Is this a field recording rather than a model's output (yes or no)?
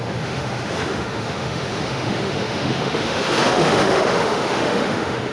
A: no